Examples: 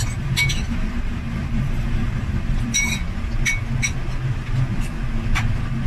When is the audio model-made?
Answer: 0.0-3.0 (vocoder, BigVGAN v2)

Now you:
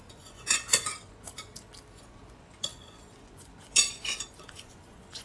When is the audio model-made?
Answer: 0.0-1.5 (vocoder, Vocos); 2.0-5.2

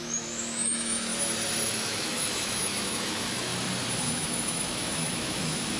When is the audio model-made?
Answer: 0.0-1.1 (autoencoder, DAC-VAE); 1.7-3.5; 4.1-5.8

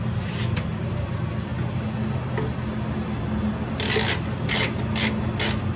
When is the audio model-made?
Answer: none

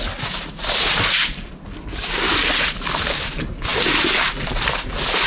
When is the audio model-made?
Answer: none

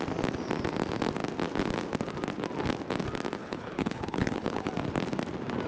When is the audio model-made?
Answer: 3.4-4.7 (codec, HILCodec)

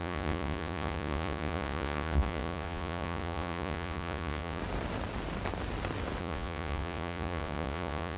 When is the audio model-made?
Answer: 0.0-4.6 (vocoder, Vocos); 6.2-8.2

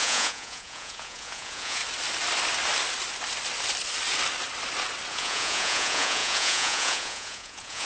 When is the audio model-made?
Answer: 0.0-1.8 (vocoder, Vocos); 5.1-7.9